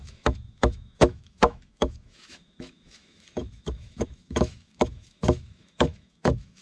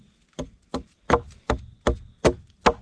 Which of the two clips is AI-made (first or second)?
first